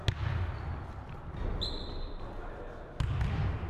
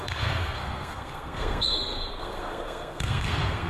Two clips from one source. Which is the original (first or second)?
first